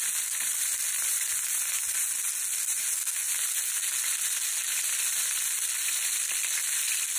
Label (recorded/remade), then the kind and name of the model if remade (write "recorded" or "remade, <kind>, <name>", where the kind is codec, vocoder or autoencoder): recorded